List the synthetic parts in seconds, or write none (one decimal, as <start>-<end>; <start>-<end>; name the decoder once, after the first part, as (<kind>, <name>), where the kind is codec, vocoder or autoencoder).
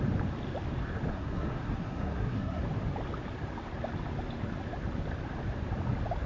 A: 1.1-2.6 (codec, SNAC)